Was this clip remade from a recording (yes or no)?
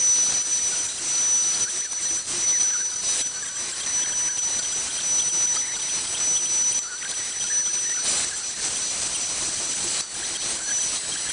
no